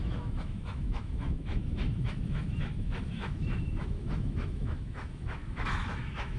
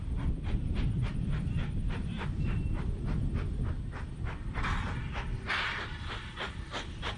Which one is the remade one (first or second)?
first